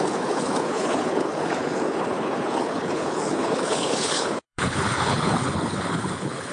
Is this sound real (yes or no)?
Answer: no